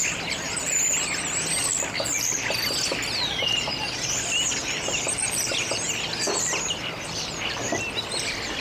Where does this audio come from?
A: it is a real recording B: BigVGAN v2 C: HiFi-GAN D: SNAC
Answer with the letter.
A